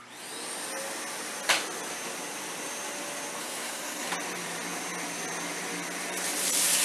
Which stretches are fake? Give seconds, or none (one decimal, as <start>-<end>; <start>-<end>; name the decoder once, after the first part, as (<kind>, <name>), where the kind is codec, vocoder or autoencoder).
3.4-4.1 (codec, SNAC)